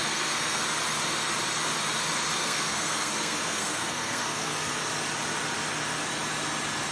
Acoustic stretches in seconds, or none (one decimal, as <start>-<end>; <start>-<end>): 0.6-2.3; 4.7-6.9